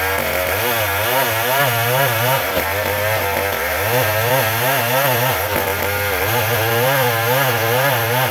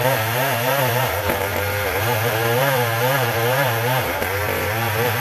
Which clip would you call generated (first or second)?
second